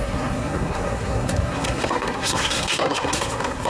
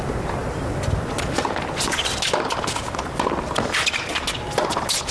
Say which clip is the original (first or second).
second